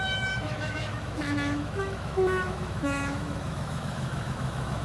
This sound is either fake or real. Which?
fake